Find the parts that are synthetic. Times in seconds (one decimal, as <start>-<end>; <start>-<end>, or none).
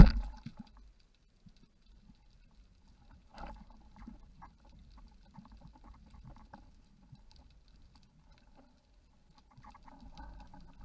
none